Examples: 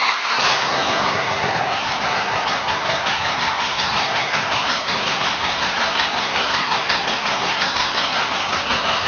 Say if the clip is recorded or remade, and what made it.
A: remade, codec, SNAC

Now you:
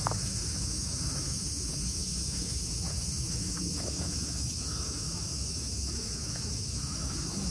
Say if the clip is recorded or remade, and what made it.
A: remade, autoencoder, DAC-VAE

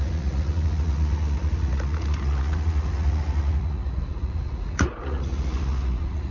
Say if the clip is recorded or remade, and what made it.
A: remade, vocoder, Vocos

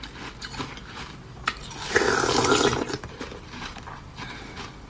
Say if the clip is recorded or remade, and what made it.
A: recorded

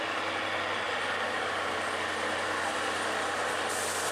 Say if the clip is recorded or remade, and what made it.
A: recorded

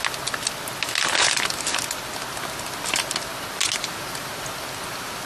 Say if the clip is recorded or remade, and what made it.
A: recorded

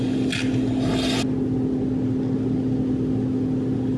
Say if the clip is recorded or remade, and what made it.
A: recorded